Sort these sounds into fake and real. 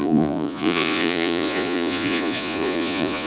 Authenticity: fake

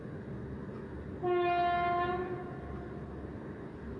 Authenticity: real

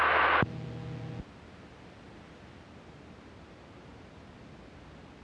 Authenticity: real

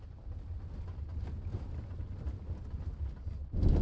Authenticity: real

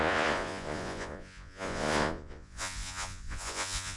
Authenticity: fake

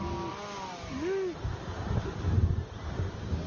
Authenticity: real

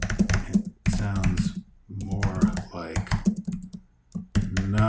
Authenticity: real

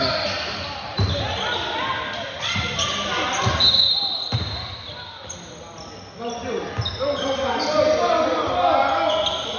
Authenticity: real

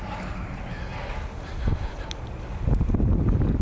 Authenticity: real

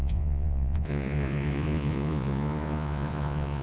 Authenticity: fake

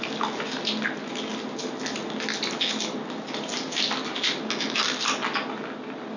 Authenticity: real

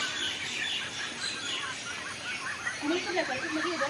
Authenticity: real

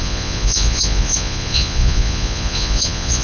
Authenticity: fake